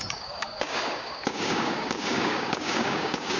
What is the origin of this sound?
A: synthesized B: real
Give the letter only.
A